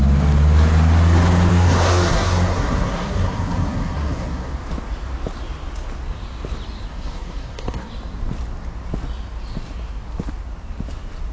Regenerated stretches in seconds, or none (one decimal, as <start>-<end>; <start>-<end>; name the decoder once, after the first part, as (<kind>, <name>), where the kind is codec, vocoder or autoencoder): 1.5-4.5 (codec, SNAC); 6.9-7.9